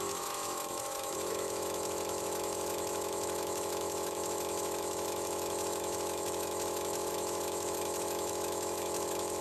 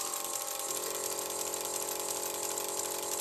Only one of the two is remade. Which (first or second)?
first